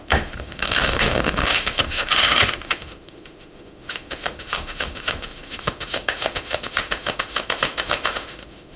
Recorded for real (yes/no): no